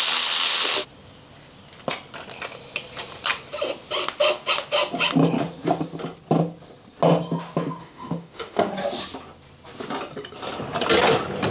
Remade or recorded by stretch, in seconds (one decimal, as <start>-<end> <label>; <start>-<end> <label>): 0.0-7.8 recorded; 7.8-8.7 remade; 8.7-11.5 recorded